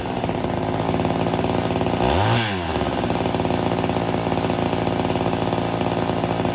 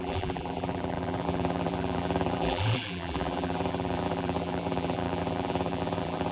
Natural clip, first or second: first